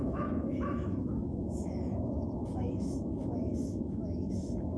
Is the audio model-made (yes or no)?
yes